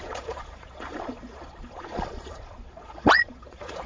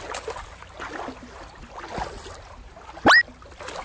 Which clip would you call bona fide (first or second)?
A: second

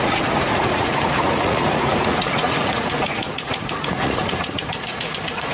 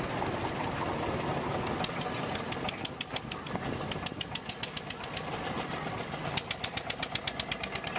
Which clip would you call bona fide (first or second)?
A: second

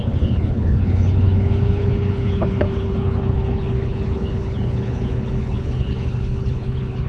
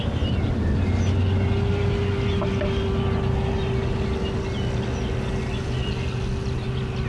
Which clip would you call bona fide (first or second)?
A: second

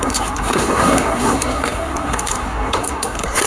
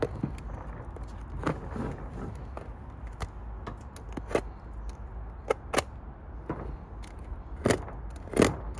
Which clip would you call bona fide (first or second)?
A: second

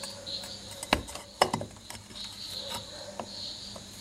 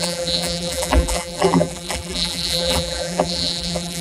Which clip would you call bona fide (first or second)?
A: first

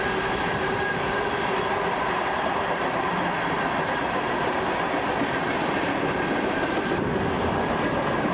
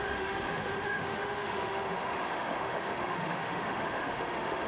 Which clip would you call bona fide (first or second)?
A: first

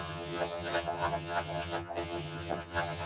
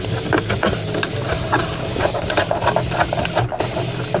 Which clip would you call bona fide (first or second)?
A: second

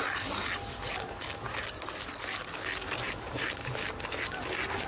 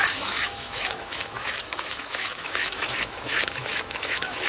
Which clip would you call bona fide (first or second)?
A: first